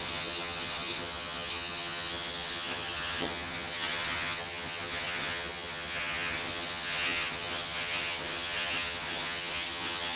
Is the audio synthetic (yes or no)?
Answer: yes